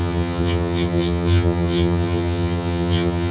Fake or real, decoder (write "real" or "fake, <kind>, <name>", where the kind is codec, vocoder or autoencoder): fake, vocoder, HiFi-GAN